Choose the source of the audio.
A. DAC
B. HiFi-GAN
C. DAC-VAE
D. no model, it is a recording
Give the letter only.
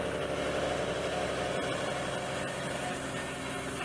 D